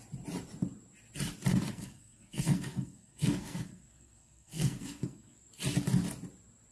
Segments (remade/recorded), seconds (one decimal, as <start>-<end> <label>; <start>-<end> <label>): 0.0-1.5 recorded; 1.5-5.5 remade; 5.5-6.7 recorded